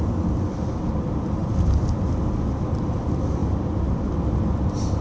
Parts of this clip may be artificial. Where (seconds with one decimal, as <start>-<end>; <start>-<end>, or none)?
none